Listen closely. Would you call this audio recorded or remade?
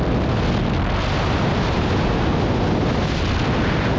recorded